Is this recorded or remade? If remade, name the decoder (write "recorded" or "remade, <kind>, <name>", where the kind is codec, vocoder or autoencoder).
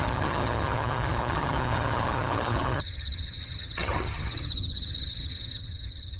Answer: remade, vocoder, HiFi-GAN